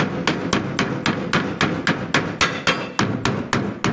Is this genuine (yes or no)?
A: yes